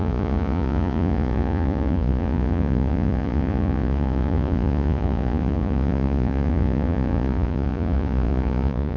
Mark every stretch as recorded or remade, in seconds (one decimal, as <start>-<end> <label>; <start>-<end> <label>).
0.0-9.0 remade